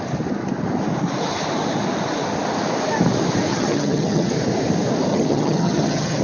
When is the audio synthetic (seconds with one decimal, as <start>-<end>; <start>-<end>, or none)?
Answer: 3.5-4.3; 5.1-6.2